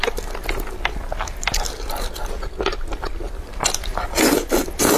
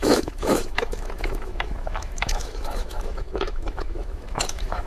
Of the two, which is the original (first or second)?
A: first